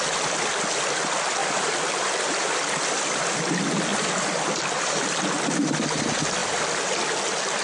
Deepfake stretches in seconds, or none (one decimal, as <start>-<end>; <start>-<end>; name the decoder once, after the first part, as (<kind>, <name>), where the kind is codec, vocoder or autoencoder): 1.4-3.5 (vocoder, BigVGAN v2); 3.9-5.0